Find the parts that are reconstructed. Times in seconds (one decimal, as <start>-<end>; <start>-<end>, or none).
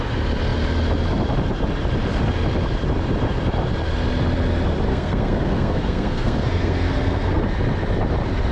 4.9-7.4